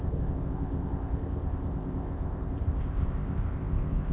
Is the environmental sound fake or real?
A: fake